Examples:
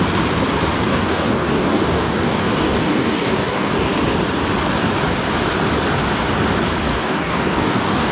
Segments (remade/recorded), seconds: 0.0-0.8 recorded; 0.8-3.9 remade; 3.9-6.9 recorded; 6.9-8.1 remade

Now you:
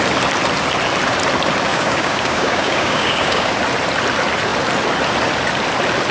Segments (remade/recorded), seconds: 0.0-1.7 recorded; 1.7-3.5 remade; 3.5-6.1 recorded

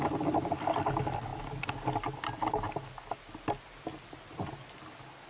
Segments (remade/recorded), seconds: 0.0-5.3 recorded

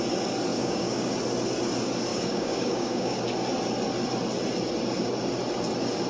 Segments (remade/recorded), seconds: 0.0-0.5 recorded; 0.5-1.1 remade; 1.1-2.1 recorded; 2.1-3.2 remade; 3.2-6.1 recorded

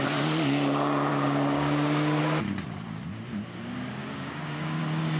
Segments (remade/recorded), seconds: 0.0-1.1 recorded; 1.1-2.2 remade; 2.2-4.0 recorded; 4.0-4.8 remade; 4.8-5.2 recorded

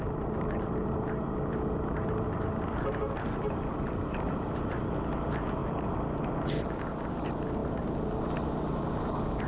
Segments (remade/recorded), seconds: 0.0-9.5 recorded

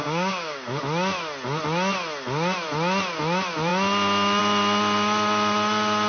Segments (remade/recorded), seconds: 0.0-0.8 remade; 0.8-6.1 recorded